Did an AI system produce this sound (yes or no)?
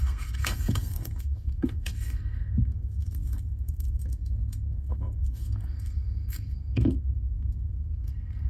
yes